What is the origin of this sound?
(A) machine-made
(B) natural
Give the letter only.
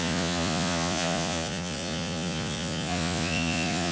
A